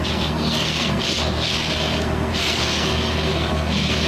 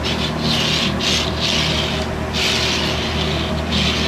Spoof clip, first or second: first